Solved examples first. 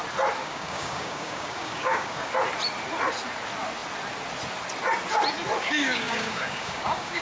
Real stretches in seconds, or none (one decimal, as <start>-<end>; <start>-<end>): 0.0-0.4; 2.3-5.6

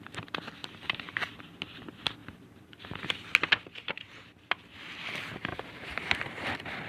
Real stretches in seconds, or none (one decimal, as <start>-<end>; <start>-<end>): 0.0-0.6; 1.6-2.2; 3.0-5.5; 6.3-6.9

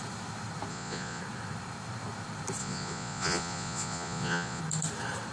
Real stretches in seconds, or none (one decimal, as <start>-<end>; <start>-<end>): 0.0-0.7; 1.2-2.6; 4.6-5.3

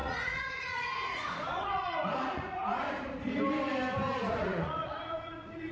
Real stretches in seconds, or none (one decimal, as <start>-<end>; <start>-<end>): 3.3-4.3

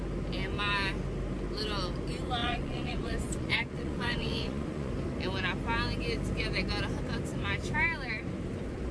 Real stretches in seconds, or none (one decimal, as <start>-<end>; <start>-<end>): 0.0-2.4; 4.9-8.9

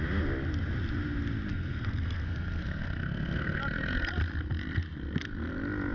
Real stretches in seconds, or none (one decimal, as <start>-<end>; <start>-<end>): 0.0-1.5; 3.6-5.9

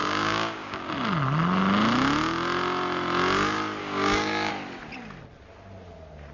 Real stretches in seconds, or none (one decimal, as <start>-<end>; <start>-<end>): 0.9-3.8; 4.5-6.3